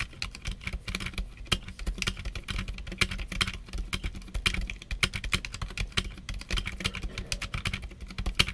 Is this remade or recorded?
recorded